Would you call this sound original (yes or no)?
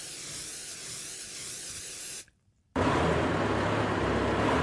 yes